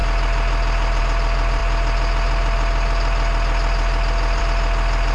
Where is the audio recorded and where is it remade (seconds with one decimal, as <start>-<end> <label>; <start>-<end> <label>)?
0.0-5.1 recorded